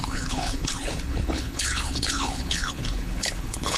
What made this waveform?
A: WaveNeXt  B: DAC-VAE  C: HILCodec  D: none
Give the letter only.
C